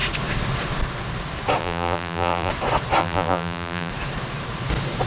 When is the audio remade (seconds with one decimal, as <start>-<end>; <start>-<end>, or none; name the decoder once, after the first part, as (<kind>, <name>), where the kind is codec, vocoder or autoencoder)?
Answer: 1.6-2.5 (vocoder, BigVGAN v2); 3.0-3.9